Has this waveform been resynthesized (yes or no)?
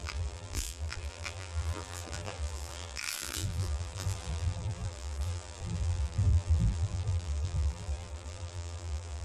yes